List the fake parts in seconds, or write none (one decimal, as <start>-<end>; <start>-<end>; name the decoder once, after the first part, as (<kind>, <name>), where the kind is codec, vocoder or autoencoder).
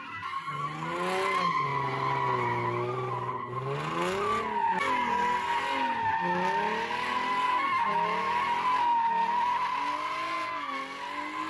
none